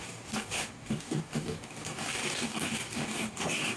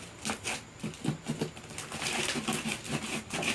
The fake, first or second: first